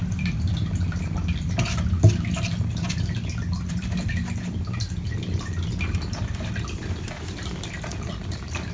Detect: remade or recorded recorded